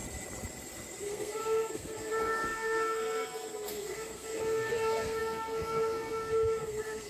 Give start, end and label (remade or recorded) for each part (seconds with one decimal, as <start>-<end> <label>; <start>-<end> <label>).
0.0-1.0 recorded; 1.0-7.1 remade